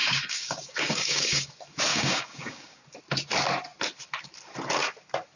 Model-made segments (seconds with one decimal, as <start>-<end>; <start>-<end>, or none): 0.0-1.5; 1.9-2.8